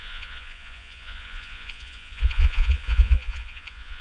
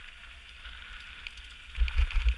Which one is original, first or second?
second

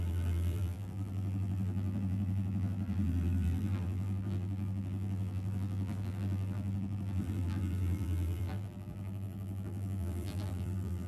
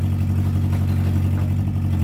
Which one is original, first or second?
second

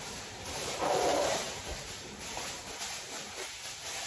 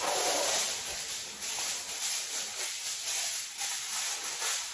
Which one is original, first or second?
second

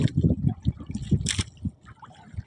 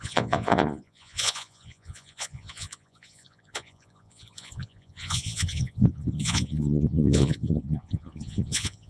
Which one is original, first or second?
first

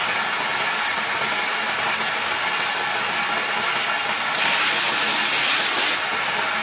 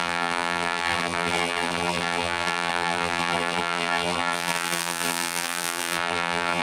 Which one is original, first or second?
first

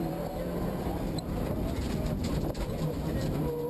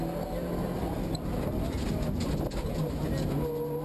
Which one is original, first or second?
second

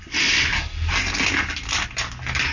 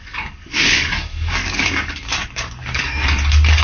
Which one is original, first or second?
first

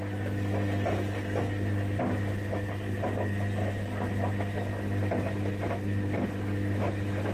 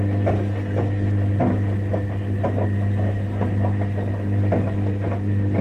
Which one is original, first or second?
first